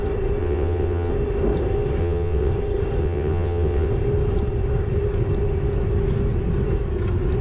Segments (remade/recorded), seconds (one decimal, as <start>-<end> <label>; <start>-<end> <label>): 0.0-0.4 recorded; 0.4-1.1 remade; 1.1-2.0 recorded; 2.0-2.5 remade; 2.5-3.0 recorded; 3.0-3.9 remade; 3.9-7.4 recorded